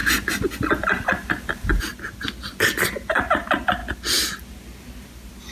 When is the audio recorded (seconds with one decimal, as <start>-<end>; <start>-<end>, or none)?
0.0-5.5